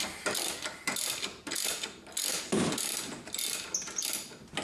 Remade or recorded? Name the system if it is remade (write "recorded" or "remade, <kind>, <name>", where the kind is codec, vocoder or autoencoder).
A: recorded